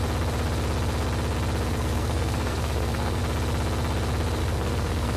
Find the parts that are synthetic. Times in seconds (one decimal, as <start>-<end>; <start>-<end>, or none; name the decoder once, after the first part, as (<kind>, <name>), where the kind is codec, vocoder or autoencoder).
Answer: 1.7-3.2 (codec, SNAC); 4.4-5.2